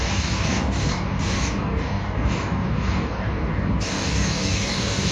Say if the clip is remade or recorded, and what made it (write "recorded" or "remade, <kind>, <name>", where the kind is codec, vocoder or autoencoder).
remade, codec, DAC